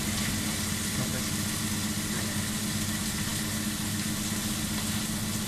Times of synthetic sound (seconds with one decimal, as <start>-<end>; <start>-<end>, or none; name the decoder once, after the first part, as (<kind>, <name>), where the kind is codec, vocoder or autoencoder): none